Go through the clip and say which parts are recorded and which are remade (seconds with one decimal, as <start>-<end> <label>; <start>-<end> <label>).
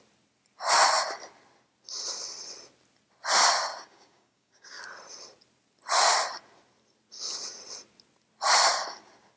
0.0-3.7 recorded; 3.7-4.8 remade; 4.8-9.4 recorded